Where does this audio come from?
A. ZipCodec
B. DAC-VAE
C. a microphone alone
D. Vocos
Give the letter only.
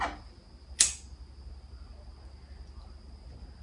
C